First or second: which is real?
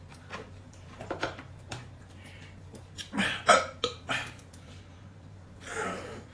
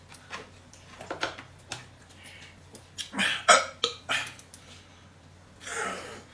second